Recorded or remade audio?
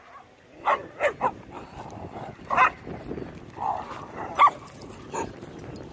recorded